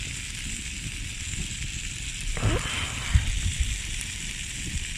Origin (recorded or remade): recorded